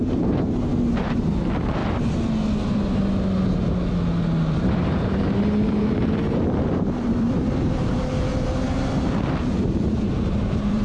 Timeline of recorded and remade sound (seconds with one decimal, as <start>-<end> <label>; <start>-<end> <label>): 0.0-0.7 remade; 0.7-1.3 recorded; 1.3-1.8 remade; 1.8-4.6 recorded; 4.6-8.3 remade; 8.3-9.0 recorded; 9.0-10.8 remade